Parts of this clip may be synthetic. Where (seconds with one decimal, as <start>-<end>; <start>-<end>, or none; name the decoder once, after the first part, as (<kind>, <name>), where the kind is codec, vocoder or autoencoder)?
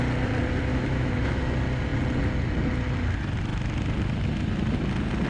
0.7-1.4 (autoencoder, DAC-VAE)